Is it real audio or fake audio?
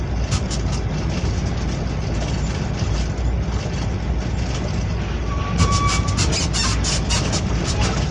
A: real